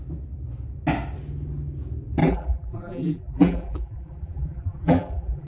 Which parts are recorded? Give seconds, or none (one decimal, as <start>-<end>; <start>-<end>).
0.0-2.2